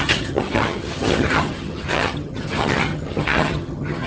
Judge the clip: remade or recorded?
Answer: remade